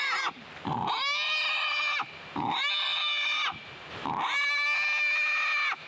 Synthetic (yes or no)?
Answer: no